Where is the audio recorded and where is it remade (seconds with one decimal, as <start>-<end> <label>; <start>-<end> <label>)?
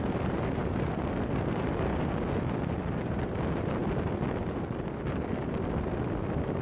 0.0-6.6 recorded